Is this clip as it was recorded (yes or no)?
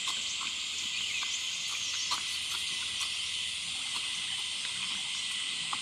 yes